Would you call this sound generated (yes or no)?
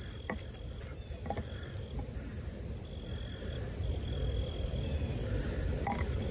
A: no